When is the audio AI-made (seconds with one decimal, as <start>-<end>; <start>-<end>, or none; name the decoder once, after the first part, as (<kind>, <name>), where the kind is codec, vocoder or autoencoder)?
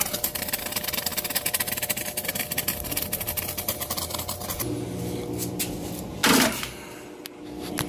none